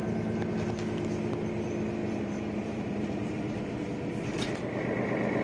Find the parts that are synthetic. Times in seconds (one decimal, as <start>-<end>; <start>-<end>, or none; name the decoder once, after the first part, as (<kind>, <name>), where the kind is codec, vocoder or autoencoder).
2.0-3.8 (vocoder, BigVGAN v2)